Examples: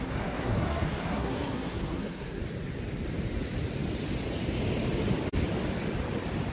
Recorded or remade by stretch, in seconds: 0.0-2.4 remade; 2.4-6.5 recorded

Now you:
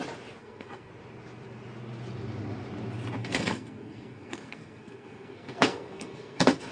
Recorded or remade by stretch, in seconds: 0.0-0.4 recorded; 0.4-0.9 remade; 0.9-3.2 recorded; 3.2-6.7 remade